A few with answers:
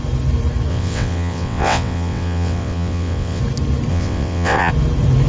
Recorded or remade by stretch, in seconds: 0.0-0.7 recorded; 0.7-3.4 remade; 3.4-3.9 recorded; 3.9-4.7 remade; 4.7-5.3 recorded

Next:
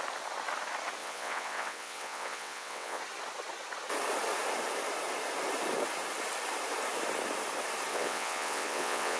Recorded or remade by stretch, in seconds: 0.0-1.0 recorded; 1.0-3.0 remade; 3.0-7.9 recorded; 7.9-9.2 remade

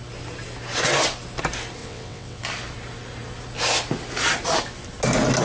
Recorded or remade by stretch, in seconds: 0.0-1.8 recorded; 1.8-2.4 remade; 2.4-5.4 recorded

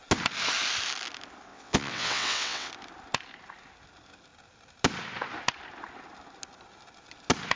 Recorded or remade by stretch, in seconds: 0.0-1.5 recorded; 1.5-2.7 remade; 2.7-7.6 recorded

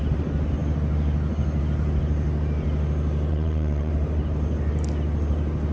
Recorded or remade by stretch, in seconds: 0.0-3.3 recorded; 3.3-3.9 remade; 3.9-5.7 recorded